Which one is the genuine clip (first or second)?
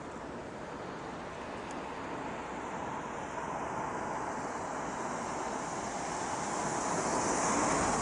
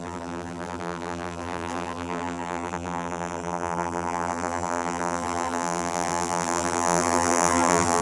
first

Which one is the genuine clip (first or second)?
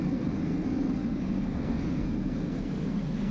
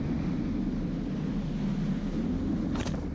second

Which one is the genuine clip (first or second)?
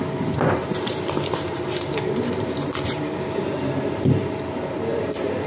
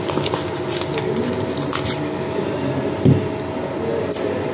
second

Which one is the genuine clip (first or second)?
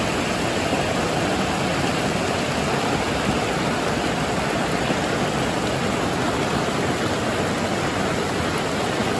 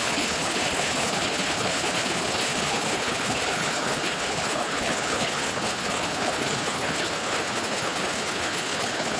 first